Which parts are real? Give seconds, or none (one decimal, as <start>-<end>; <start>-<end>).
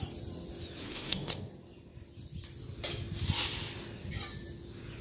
0.0-0.8; 1.5-5.0